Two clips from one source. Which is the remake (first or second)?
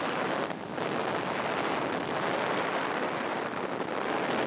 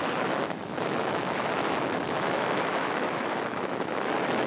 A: second